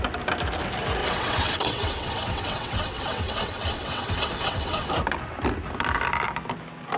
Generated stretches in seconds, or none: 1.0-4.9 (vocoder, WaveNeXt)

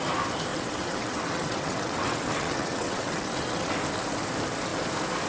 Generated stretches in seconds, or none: 0.5-3.7 (vocoder, WaveNeXt)